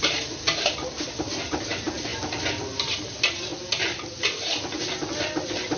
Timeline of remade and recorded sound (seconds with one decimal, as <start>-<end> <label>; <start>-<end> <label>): 0.0-5.8 recorded